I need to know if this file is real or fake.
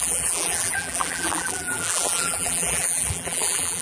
fake